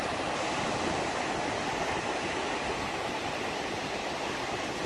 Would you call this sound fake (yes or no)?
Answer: no